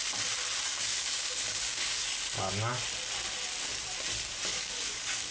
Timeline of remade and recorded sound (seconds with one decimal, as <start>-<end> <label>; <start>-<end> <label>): 0.0-0.7 recorded; 0.7-2.5 remade; 2.5-4.5 recorded; 4.5-5.3 remade